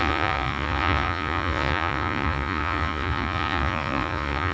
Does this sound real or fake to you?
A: fake